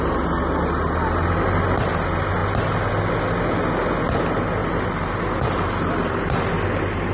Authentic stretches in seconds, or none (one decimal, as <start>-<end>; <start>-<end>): 0.0-7.1